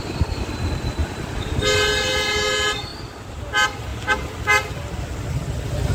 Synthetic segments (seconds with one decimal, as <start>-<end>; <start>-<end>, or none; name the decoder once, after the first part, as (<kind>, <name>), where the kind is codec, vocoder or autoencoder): none